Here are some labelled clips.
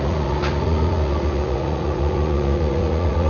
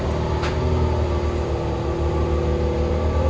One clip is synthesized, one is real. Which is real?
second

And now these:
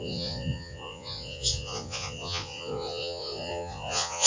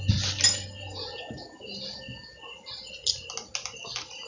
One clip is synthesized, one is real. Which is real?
second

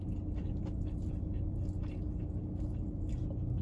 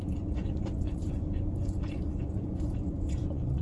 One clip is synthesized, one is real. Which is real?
first